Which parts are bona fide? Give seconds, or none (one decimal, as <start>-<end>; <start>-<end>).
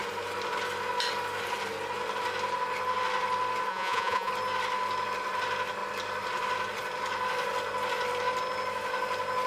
0.0-3.7; 4.3-9.5